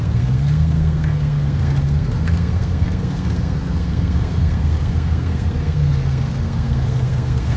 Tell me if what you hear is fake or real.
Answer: fake